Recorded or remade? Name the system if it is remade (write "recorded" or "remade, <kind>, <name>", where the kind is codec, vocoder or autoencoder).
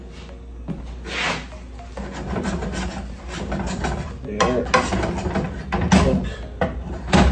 recorded